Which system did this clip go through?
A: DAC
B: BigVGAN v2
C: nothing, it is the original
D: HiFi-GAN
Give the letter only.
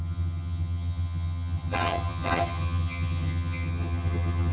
D